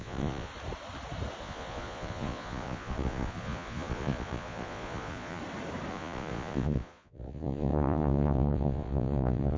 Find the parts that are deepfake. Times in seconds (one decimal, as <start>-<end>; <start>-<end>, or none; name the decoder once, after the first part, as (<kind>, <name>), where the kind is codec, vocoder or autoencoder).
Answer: 0.0-0.5 (vocoder, Vocos); 1.4-5.4; 5.9-9.6